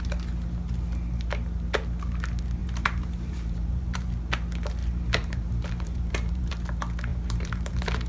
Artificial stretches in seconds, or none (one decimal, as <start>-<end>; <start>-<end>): 2.6-4.1; 4.8-6.5; 7.1-8.1